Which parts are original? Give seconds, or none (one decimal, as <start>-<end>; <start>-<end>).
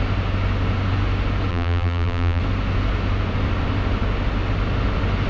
0.0-1.5; 2.4-5.3